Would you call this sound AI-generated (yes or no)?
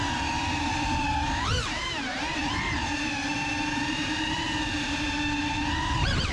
yes